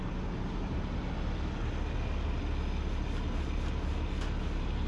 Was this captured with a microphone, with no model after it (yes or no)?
yes